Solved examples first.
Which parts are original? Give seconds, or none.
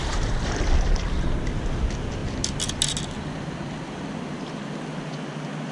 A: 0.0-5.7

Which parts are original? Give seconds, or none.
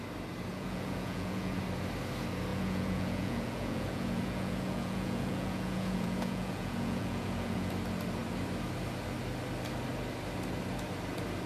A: 0.0-0.5; 1.6-2.5; 7.7-11.5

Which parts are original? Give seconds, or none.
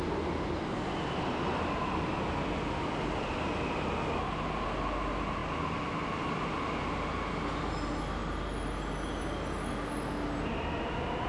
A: 0.0-11.3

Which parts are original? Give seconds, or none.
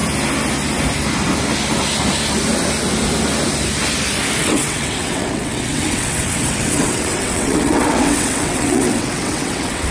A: 0.0-4.4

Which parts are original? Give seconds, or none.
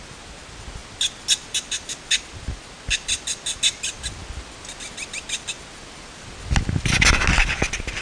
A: 0.0-8.0